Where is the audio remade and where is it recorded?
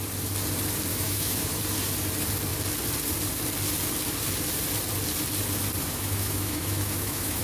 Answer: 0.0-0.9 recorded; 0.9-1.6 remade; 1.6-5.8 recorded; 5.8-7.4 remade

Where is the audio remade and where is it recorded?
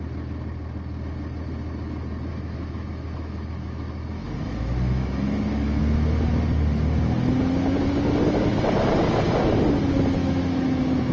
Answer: 0.0-2.3 recorded; 2.3-5.8 remade; 5.8-10.2 recorded; 10.2-11.1 remade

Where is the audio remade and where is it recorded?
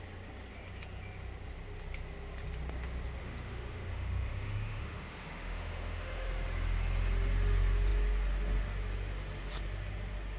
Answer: 0.0-3.2 recorded; 3.2-6.3 remade; 6.3-10.4 recorded